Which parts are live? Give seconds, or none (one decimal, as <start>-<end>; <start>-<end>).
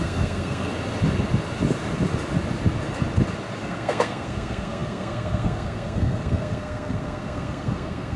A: 0.7-3.6